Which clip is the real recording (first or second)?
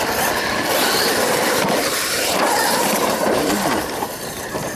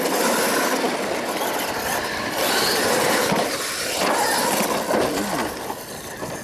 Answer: second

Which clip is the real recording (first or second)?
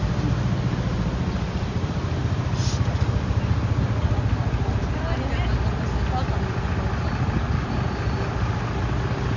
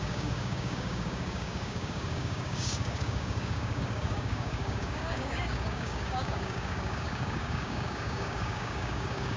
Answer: first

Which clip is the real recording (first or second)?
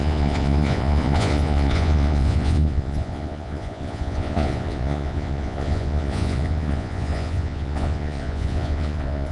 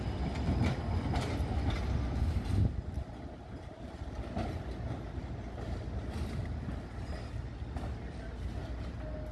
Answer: second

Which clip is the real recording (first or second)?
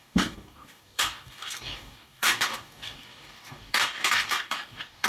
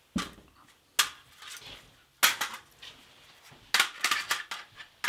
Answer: second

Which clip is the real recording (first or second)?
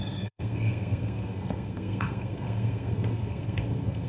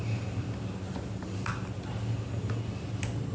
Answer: second